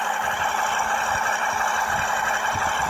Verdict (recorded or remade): remade